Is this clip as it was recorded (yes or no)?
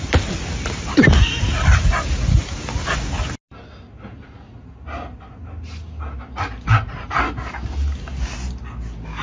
yes